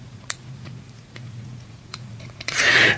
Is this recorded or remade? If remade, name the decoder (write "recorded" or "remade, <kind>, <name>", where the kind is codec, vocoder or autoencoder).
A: remade, vocoder, Vocos